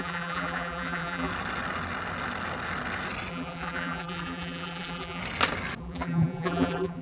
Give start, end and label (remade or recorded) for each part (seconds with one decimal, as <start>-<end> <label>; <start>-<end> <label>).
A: 0.0-1.3 remade; 1.3-3.3 recorded; 3.3-5.2 remade; 5.2-5.8 recorded; 5.8-7.0 remade